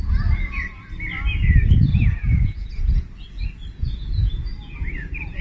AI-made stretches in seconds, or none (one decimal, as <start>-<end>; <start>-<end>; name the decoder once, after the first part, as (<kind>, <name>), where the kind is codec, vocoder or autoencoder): 0.0-0.8 (vocoder, Vocos); 1.9-5.4